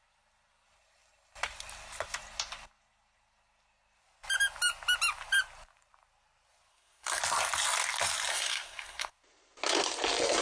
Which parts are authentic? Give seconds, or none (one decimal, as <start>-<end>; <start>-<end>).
0.0-6.7; 7.2-8.3; 9.1-10.4

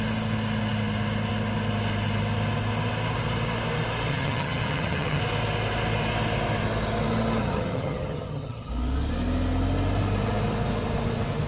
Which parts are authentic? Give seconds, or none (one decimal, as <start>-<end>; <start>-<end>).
0.0-4.1; 5.2-7.4; 8.7-11.5

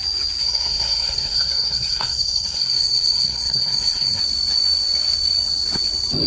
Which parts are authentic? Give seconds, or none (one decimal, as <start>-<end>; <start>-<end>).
0.0-0.4; 4.2-6.3

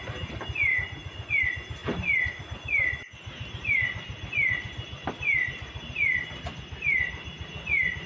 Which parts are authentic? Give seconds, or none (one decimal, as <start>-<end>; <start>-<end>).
0.0-0.7; 1.3-8.1

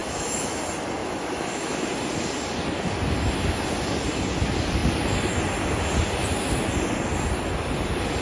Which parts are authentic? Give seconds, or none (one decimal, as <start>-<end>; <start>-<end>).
0.6-1.0; 1.9-8.2

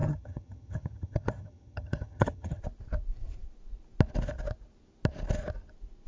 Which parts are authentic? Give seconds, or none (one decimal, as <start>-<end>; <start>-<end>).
2.6-6.1

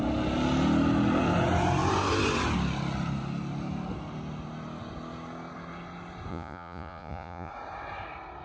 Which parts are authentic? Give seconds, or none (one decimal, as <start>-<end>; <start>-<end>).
0.0-6.3; 7.5-8.4

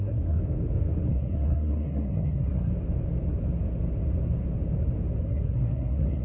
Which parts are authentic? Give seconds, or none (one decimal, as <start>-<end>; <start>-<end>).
0.4-1.1; 2.7-5.2